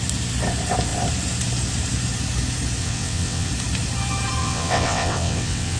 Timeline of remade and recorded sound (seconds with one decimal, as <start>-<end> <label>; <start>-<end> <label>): 0.0-2.8 recorded; 2.8-3.5 remade; 3.5-4.4 recorded; 4.4-5.8 remade